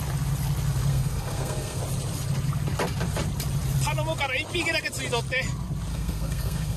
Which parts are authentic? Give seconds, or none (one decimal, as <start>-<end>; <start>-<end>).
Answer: 0.0-0.9; 1.8-5.9

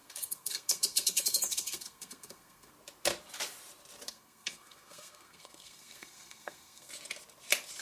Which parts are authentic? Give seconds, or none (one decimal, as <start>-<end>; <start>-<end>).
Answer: 2.7-4.1; 6.9-7.8

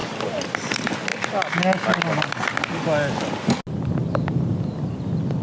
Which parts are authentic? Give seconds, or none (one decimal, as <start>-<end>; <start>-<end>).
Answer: 0.0-5.4

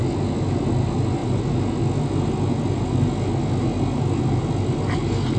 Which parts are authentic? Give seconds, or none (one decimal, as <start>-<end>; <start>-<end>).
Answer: 0.0-5.4

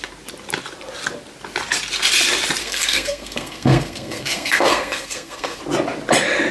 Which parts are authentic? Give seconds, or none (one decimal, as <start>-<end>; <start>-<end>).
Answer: 0.0-2.6; 5.6-6.5